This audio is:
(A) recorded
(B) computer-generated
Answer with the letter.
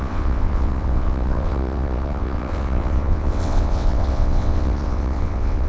B